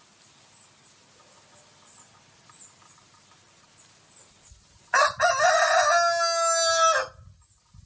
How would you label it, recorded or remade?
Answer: recorded